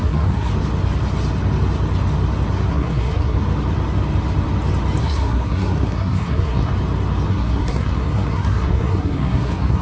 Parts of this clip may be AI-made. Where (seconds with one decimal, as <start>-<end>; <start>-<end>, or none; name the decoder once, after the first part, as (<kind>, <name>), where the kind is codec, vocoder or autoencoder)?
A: 0.0-0.5 (codec, SNAC); 2.7-3.4; 5.0-6.7; 7.3-9.8